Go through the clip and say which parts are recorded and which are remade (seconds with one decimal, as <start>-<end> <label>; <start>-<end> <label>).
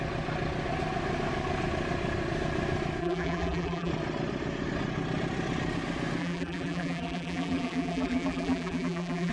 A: 0.0-3.0 recorded; 3.0-3.9 remade; 3.9-6.2 recorded; 6.2-9.3 remade